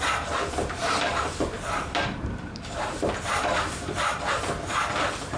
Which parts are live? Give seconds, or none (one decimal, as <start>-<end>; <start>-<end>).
0.0-0.8; 4.0-5.4